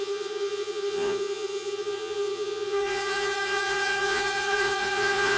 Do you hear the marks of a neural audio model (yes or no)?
yes